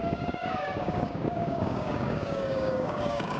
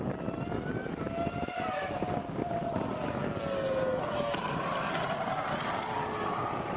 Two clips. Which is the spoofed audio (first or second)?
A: first